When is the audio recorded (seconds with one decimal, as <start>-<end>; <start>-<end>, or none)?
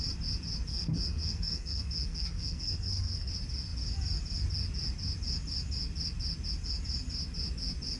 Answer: 0.0-0.7; 3.3-8.0